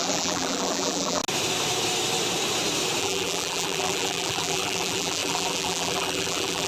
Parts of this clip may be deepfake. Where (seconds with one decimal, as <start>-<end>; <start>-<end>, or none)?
0.0-1.2; 3.0-6.7